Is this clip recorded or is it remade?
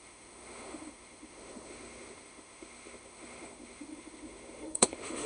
remade